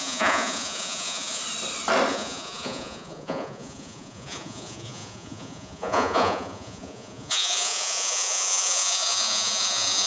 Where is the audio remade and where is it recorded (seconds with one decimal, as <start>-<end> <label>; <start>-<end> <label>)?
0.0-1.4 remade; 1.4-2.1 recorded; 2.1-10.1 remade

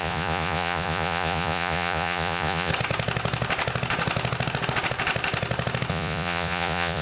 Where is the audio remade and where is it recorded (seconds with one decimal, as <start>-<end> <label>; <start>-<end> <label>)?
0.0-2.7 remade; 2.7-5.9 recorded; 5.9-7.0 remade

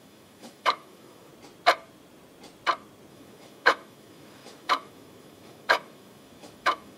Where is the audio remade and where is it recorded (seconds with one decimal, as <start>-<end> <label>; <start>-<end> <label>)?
0.0-1.3 remade; 1.3-3.1 recorded; 3.1-7.0 remade

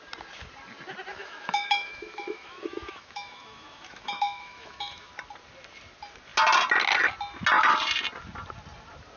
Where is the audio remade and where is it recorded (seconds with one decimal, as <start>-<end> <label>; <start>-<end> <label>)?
0.0-1.1 recorded; 1.1-5.1 remade; 5.1-9.2 recorded

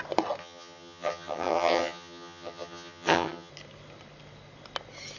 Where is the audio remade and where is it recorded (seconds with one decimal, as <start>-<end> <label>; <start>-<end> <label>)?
0.0-0.4 recorded; 0.4-3.5 remade; 3.5-5.2 recorded

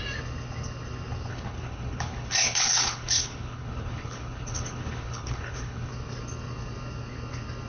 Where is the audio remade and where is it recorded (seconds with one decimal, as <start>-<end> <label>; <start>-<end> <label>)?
0.0-1.3 recorded; 1.3-5.9 remade; 5.9-7.7 recorded

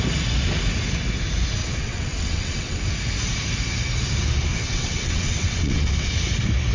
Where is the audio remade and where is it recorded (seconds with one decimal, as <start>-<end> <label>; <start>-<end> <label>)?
0.0-1.6 recorded; 1.6-2.8 remade; 2.8-4.5 recorded; 4.5-6.1 remade; 6.1-6.7 recorded

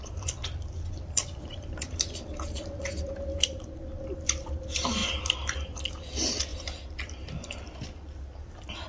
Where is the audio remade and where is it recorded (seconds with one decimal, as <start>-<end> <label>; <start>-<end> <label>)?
0.0-8.9 remade